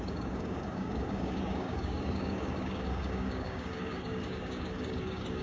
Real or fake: fake